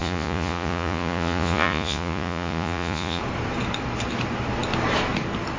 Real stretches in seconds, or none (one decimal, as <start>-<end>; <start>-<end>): 3.2-5.6